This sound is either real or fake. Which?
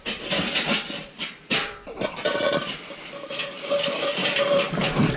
fake